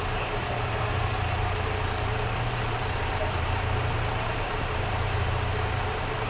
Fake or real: fake